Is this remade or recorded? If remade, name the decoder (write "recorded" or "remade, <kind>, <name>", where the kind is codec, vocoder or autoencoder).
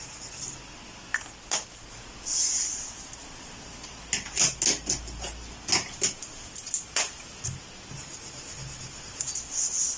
recorded